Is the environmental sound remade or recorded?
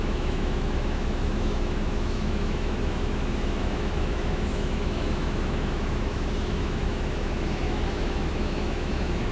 remade